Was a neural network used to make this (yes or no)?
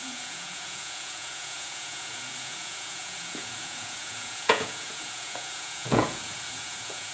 yes